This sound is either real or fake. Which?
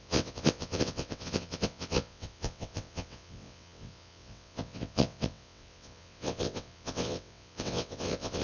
fake